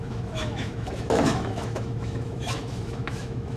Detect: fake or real fake